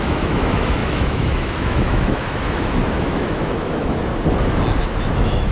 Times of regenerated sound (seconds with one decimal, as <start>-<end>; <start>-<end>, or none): 0.0-4.1; 4.8-5.5